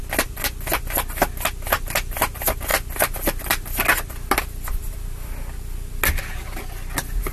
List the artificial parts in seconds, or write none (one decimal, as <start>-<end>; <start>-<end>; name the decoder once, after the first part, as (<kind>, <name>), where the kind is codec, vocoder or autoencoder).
none

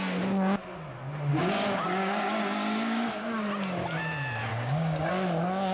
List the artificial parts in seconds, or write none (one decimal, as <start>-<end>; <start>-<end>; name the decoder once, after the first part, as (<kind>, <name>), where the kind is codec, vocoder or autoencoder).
1.3-3.5 (codec, DAC); 4.5-5.1

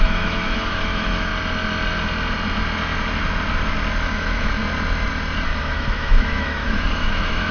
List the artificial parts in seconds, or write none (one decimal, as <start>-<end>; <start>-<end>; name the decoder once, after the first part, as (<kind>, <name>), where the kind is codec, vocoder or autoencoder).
0.0-1.3 (autoencoder, DAC-VAE); 4.0-4.6; 5.6-7.5

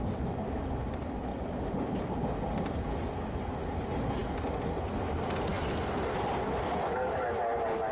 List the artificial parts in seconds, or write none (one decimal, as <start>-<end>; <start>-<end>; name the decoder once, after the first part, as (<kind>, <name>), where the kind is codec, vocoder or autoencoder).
1.3-2.2 (vocoder, BigVGAN v2)

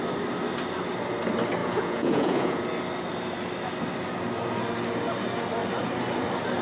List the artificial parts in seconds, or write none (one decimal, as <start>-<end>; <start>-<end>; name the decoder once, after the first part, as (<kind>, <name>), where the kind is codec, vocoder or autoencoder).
1.6-2.6 (vocoder, Vocos)

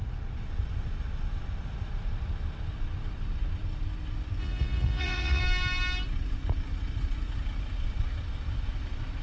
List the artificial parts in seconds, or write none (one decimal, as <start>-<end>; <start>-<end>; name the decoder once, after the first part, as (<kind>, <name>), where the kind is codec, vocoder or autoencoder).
4.4-5.4 (vocoder, Vocos)

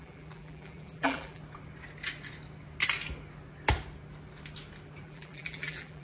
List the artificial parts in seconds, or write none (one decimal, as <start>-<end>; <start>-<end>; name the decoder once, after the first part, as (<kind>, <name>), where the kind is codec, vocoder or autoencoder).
0.0-1.4 (vocoder, BigVGAN v2); 5.0-6.0

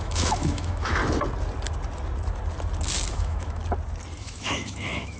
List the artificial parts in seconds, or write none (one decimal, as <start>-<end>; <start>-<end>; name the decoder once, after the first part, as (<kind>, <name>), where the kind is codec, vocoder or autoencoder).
0.0-1.0 (autoencoder, DAC-VAE); 3.1-3.6; 4.2-5.2